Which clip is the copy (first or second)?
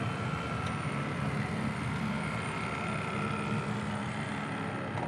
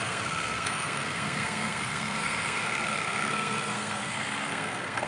second